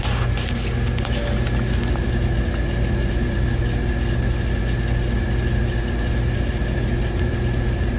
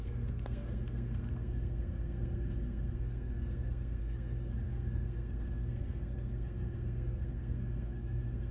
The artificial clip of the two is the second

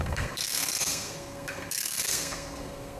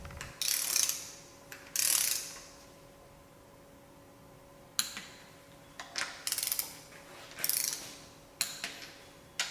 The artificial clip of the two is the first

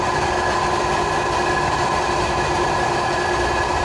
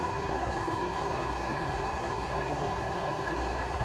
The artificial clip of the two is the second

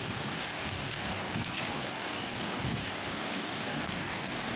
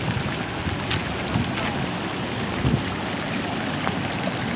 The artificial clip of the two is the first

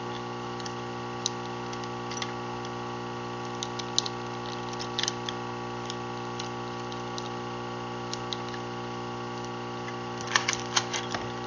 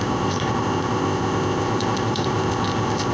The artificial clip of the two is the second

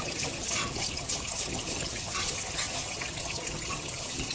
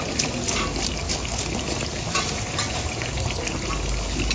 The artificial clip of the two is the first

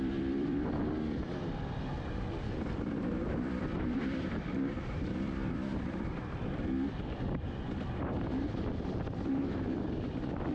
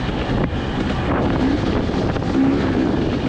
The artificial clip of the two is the first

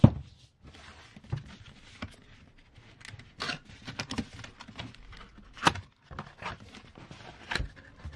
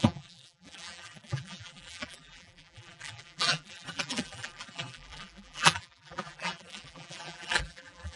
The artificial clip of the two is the second